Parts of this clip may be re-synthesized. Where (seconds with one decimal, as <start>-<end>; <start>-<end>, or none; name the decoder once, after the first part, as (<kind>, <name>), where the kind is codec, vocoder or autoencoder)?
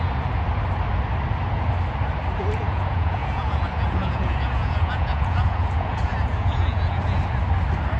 2.4-7.2 (vocoder, Vocos)